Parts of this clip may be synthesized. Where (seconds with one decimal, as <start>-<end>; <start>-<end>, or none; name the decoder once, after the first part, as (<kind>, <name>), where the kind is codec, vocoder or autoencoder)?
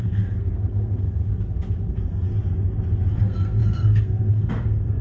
0.0-1.2 (codec, SNAC); 1.9-2.3; 3.1-5.0